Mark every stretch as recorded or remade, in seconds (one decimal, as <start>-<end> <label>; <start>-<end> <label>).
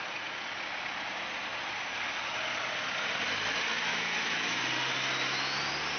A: 0.0-3.9 recorded; 3.9-4.6 remade; 4.6-6.0 recorded